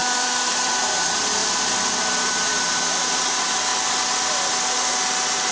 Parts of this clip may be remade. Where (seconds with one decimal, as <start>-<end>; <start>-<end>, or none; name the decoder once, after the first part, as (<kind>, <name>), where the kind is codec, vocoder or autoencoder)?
0.0-1.4 (vocoder, BigVGAN v2); 2.0-3.7